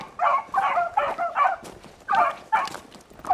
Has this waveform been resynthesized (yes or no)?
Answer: no